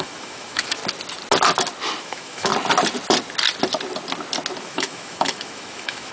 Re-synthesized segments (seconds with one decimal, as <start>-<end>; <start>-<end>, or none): 0.0-0.8; 2.0-2.5; 4.6-6.1